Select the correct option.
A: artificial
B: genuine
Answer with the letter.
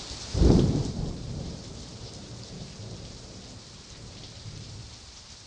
A